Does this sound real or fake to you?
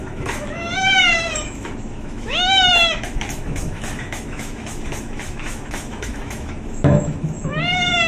fake